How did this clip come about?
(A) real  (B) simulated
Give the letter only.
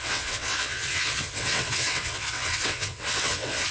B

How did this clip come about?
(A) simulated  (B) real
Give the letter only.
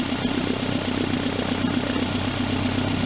B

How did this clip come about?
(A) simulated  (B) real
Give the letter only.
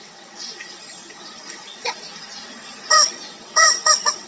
A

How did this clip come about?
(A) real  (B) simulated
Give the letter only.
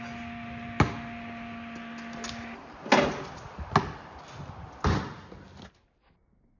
A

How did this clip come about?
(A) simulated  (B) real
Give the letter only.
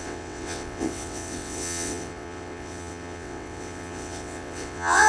A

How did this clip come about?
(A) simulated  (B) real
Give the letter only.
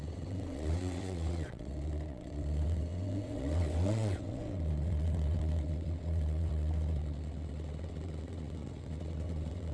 A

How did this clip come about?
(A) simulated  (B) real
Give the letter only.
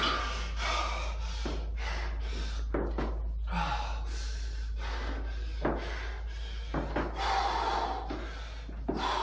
B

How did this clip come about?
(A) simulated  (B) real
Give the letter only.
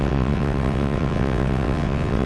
A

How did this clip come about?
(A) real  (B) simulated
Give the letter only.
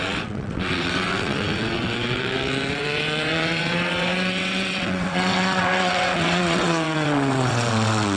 B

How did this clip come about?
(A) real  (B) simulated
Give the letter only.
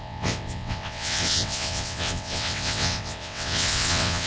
B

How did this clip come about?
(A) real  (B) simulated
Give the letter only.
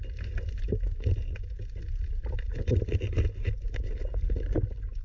A